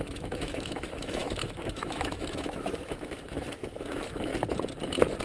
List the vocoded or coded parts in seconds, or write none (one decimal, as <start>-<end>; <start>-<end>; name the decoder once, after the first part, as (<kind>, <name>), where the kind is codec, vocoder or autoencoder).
0.0-4.3 (autoencoder, DAC-VAE)